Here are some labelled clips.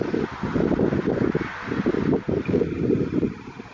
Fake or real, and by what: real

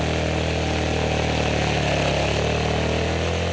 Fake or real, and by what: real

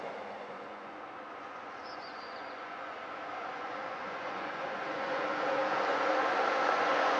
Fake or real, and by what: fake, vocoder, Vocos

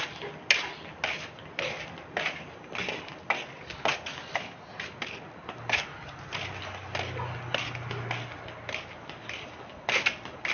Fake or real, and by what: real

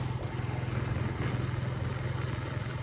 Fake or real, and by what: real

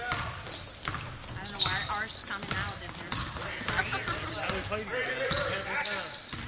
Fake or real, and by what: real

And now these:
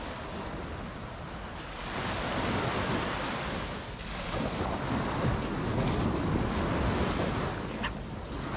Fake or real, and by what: real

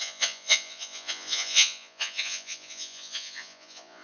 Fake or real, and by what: fake, vocoder, Vocos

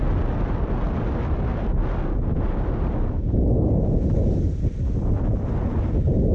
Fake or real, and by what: real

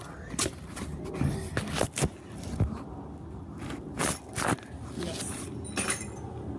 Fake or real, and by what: real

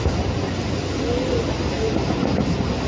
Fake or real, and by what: real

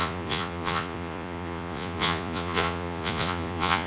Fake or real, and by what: fake, vocoder, Vocos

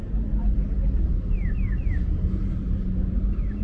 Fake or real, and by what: real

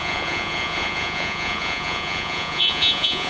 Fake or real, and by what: fake, vocoder, Vocos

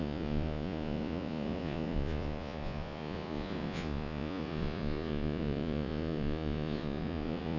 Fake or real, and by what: fake, vocoder, Vocos